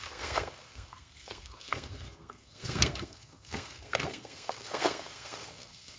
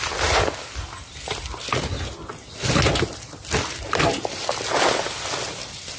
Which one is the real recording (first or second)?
second